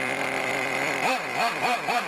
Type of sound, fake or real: fake